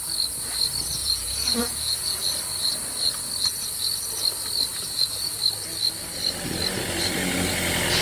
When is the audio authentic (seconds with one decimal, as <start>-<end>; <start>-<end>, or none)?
0.0-1.0; 2.2-4.7; 5.4-8.0